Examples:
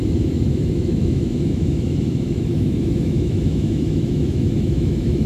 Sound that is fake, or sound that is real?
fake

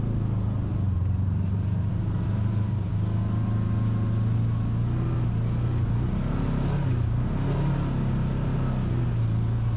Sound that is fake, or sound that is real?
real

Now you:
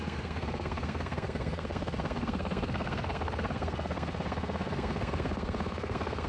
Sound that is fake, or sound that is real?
fake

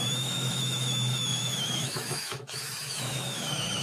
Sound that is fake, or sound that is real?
fake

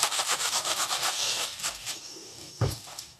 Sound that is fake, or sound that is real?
fake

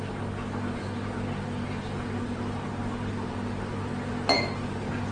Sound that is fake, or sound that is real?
real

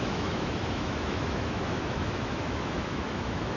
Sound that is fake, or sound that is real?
fake